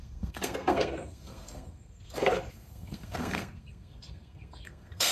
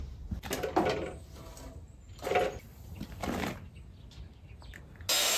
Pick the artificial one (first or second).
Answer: first